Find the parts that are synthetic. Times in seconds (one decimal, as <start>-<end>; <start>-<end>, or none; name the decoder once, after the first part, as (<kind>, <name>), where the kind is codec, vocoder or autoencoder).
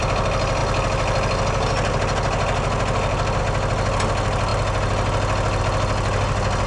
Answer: none